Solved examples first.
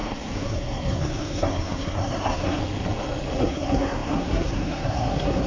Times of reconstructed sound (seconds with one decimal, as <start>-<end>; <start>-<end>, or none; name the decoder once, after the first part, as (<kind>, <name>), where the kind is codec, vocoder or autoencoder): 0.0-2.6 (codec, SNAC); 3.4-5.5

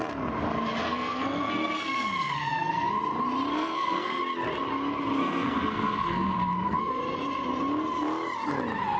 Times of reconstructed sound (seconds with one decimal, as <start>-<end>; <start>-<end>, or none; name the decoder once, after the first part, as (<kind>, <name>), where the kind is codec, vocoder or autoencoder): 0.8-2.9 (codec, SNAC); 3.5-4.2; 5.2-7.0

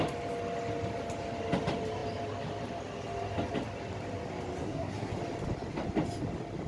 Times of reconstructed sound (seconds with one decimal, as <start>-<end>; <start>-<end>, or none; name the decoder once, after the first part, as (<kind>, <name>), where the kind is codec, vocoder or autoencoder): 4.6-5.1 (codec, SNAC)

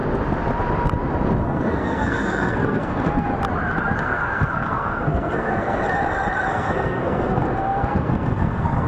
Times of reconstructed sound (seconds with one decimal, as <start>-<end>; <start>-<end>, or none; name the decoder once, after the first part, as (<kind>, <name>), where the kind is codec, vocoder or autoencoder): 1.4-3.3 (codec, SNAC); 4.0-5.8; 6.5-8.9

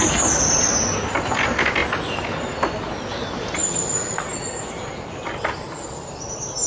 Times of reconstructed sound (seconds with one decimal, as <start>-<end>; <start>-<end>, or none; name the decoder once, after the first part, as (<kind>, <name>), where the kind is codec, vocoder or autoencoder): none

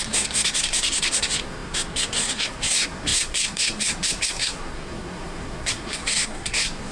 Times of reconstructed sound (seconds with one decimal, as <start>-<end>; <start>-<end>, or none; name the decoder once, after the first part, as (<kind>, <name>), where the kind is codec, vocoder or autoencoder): 0.0-6.9 (codec, SNAC)